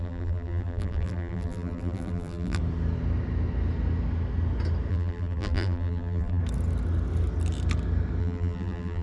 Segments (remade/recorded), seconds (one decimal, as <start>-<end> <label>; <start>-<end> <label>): 0.0-2.6 remade; 2.6-4.9 recorded; 4.9-6.4 remade; 6.4-8.2 recorded; 8.2-9.0 remade